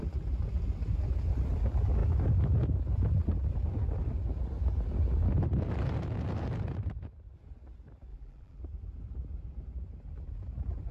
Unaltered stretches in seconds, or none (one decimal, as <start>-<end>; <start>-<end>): 0.0-8.1; 8.6-10.9